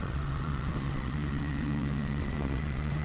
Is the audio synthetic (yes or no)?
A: yes